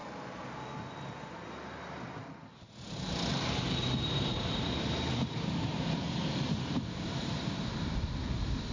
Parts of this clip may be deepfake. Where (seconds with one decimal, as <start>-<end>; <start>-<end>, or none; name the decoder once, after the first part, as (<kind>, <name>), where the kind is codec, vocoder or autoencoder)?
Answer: 3.3-8.1 (vocoder, BigVGAN v2)